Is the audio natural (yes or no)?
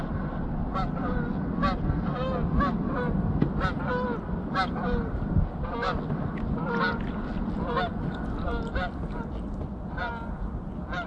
yes